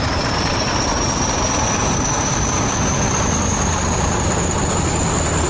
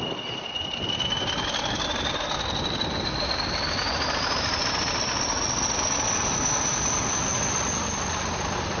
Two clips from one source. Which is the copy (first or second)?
first